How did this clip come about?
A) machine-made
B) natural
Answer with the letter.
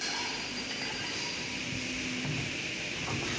A